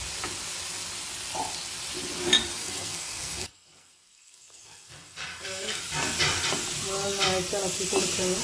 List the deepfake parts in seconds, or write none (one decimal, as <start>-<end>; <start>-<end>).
2.6-5.8